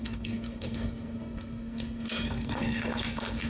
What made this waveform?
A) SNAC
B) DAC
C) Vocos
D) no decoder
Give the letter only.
A